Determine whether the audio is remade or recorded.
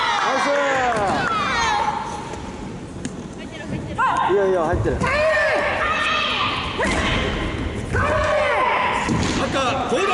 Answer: recorded